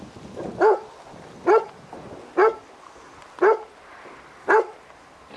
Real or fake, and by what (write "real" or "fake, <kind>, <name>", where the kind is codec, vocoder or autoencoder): real